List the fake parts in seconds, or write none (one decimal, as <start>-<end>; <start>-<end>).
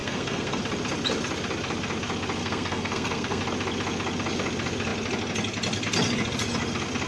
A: 0.0-0.6; 2.4-3.4